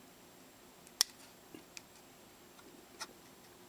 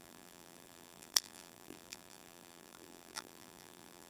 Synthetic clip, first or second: second